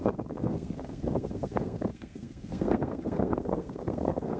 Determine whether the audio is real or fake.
fake